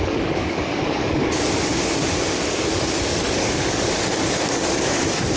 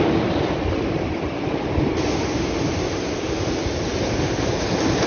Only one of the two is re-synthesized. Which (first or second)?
first